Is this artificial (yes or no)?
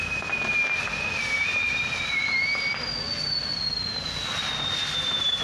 no